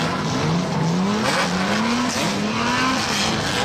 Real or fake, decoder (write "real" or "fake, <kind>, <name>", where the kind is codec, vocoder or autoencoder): real